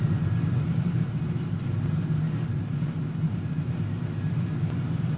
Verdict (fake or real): real